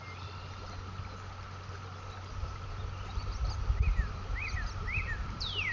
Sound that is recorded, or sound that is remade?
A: recorded